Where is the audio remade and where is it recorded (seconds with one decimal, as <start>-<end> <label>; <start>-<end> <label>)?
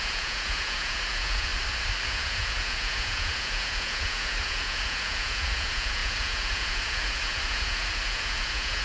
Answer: 0.0-1.5 remade; 1.5-2.1 recorded; 2.1-8.8 remade